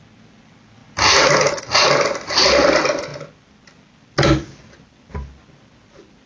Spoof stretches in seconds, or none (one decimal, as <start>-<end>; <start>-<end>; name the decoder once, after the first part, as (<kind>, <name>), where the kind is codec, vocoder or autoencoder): none